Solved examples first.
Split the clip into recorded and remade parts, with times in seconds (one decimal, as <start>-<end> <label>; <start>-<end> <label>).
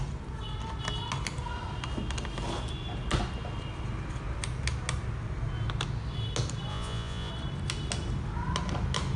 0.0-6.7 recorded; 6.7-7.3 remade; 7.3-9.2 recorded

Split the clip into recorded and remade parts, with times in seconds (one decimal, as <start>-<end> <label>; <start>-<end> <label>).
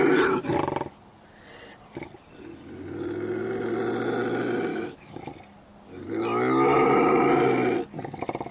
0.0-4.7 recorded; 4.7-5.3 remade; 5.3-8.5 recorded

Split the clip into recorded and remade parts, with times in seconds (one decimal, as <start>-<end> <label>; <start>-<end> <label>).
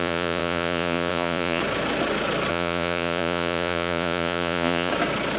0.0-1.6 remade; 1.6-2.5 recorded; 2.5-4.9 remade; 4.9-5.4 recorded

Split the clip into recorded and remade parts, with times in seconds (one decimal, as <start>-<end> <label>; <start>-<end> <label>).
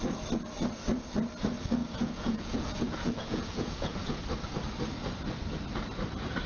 0.0-1.8 recorded; 1.8-4.2 remade; 4.2-6.5 recorded